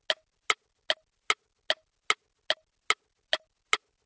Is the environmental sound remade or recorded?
recorded